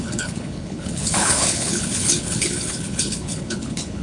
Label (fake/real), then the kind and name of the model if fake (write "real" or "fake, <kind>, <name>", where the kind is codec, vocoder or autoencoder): fake, codec, HILCodec